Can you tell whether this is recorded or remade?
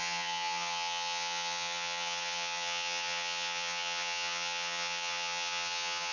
remade